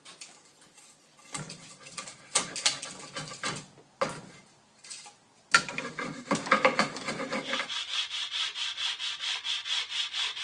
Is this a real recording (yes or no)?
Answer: yes